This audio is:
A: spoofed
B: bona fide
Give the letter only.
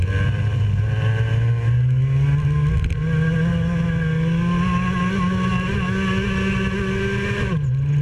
B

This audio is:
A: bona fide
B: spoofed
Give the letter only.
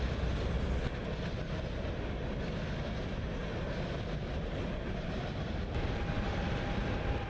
A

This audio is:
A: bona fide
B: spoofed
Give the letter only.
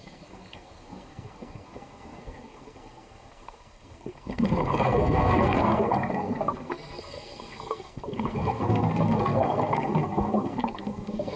B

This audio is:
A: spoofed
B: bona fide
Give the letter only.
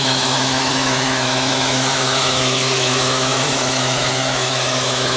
A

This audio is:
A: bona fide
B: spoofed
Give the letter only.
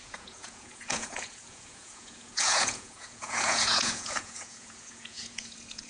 B